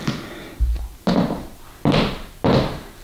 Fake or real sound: real